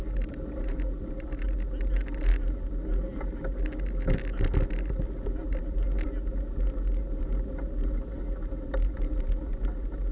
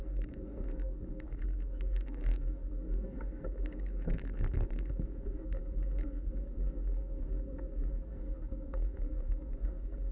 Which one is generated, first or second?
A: second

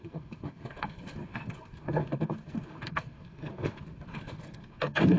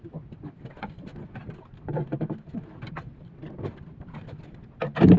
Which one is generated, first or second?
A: first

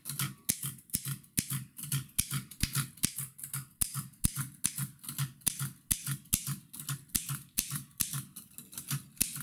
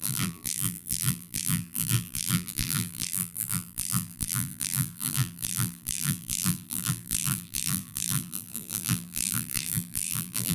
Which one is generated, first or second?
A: second